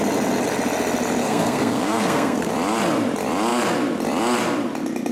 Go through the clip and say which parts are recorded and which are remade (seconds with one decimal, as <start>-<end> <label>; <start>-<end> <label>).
0.0-1.2 recorded; 1.2-2.5 remade; 2.5-5.1 recorded